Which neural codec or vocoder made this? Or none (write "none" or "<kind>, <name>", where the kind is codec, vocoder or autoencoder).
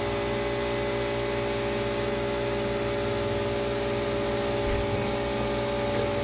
none